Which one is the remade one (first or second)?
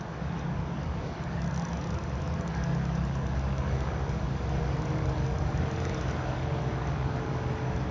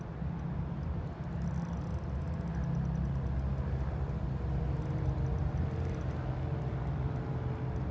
first